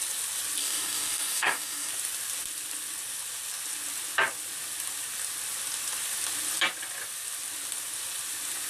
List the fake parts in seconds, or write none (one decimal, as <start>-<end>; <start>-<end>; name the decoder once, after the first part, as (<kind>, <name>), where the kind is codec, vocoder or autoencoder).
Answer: 0.6-1.9 (codec, DAC)

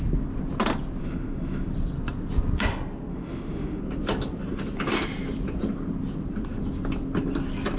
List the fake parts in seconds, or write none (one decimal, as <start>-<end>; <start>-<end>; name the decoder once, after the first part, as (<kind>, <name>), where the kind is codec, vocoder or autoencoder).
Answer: 1.0-1.7 (autoencoder, DAC-VAE); 3.1-3.8

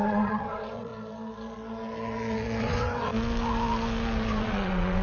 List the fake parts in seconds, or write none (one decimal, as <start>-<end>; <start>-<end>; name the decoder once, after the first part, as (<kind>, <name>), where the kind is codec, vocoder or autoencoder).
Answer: 0.0-0.9 (vocoder, WaveNeXt); 2.6-3.1; 4.4-5.0

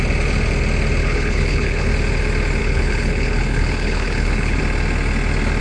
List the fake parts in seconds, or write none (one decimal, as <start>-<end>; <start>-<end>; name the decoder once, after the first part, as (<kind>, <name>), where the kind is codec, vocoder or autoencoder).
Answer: 1.0-1.9 (codec, HILCodec); 2.6-4.6

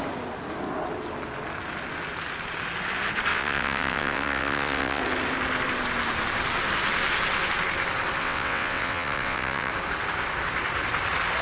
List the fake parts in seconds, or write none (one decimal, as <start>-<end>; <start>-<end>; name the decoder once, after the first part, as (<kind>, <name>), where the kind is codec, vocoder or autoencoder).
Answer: 3.3-5.0 (vocoder, WaveNeXt); 8.2-9.7

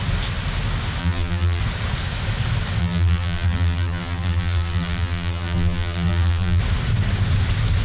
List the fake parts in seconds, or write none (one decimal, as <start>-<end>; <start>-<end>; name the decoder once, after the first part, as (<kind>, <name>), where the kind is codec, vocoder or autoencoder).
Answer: 1.0-1.6 (vocoder, BigVGAN v2); 2.8-6.6

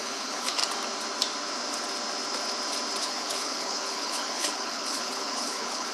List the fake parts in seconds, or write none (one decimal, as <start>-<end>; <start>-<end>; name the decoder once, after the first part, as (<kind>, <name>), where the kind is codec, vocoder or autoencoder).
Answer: 0.0-0.6 (codec, HILCodec); 3.0-5.9